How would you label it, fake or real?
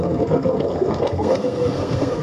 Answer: fake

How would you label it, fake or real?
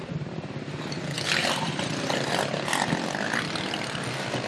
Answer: real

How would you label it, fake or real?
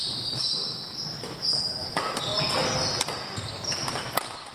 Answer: real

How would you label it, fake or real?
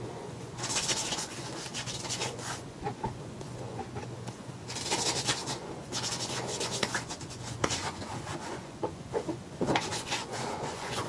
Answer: fake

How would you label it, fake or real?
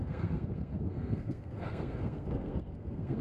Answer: fake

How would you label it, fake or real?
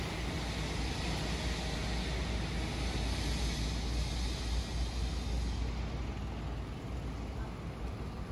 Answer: real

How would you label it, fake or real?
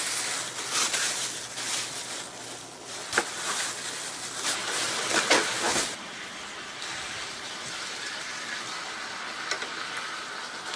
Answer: real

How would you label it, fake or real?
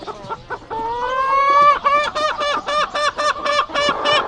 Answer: real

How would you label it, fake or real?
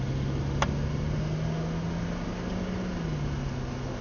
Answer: real